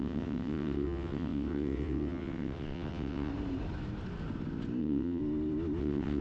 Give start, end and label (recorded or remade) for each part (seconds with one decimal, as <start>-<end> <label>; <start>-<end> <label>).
0.0-3.3 remade; 3.3-4.8 recorded; 4.8-5.2 remade; 5.2-5.8 recorded; 5.8-6.2 remade